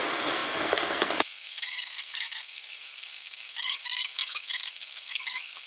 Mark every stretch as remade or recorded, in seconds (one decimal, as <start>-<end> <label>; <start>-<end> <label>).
0.0-5.7 remade